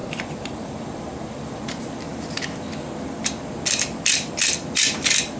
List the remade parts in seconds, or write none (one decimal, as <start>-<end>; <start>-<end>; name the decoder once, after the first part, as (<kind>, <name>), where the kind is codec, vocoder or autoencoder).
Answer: 0.0-0.7 (vocoder, BigVGAN v2)